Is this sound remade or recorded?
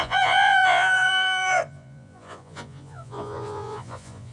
remade